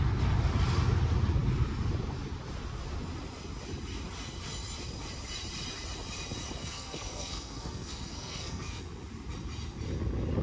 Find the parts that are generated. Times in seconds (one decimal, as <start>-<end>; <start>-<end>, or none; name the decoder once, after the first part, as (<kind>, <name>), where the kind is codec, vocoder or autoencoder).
6.6-8.8 (codec, SNAC)